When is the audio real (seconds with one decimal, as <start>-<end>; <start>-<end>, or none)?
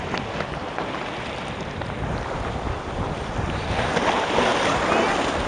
0.0-5.5